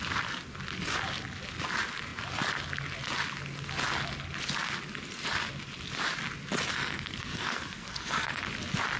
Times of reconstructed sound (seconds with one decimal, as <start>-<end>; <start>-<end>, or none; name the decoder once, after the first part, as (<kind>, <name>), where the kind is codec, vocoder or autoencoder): 6.7-8.4 (codec, SNAC)